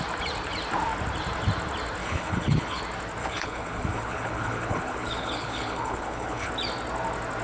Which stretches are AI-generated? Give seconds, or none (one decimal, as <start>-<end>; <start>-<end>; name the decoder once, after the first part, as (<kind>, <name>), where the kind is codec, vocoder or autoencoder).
2.0-2.8 (codec, HILCodec); 3.2-6.5

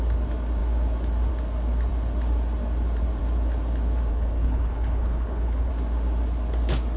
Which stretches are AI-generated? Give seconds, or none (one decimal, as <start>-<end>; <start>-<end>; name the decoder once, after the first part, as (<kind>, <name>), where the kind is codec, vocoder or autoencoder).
4.1-5.7 (codec, HILCodec)

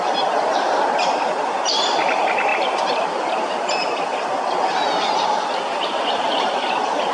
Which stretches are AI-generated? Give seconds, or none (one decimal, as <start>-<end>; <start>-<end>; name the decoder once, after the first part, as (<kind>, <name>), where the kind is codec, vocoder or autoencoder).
none